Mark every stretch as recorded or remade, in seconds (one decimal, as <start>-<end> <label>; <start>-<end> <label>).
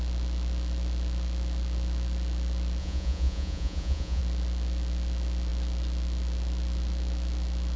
0.0-2.8 recorded; 2.8-4.2 remade; 4.2-7.8 recorded